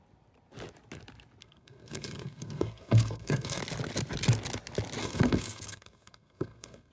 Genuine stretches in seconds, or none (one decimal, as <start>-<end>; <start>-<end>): 0.0-1.4; 3.6-5.0